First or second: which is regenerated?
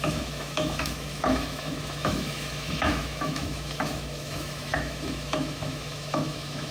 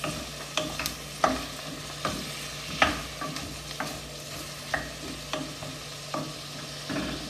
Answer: first